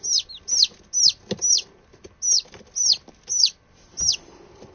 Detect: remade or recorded recorded